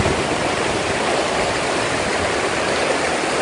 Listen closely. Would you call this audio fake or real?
real